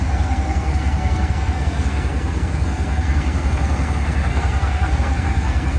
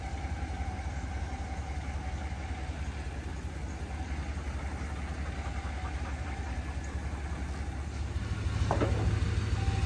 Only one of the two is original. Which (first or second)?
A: second